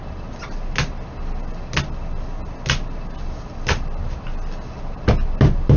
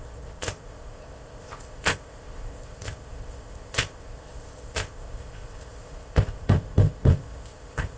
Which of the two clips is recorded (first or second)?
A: first